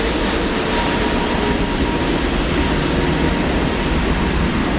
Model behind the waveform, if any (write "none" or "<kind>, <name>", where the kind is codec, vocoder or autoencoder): none